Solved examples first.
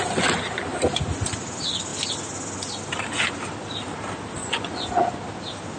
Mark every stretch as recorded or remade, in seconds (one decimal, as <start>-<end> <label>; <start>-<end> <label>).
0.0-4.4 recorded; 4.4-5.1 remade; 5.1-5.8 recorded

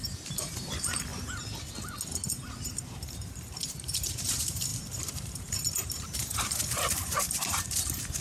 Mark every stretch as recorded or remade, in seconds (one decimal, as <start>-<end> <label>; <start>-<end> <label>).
0.0-1.1 remade; 1.1-2.3 recorded; 2.3-8.2 remade

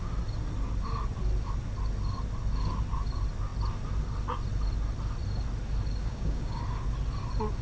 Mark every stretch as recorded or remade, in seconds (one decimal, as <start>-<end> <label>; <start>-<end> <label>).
0.0-6.0 recorded; 6.0-6.6 remade; 6.6-7.6 recorded

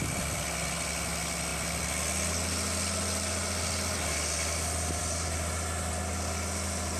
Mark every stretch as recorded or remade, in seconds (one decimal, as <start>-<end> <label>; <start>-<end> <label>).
0.0-7.0 recorded